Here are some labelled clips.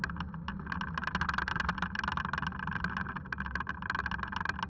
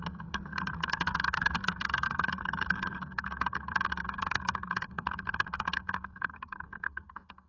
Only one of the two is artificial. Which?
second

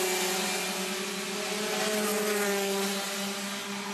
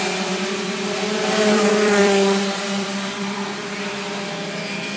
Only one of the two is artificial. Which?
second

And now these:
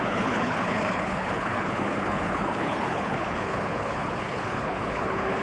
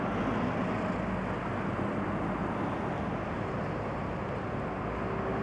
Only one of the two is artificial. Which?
first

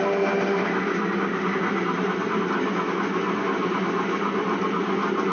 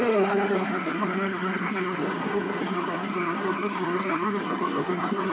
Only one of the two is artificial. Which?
second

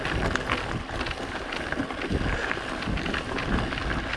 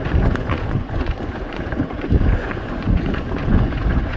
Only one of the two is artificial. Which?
second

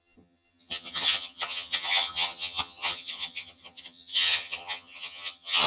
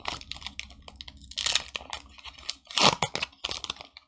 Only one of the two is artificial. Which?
first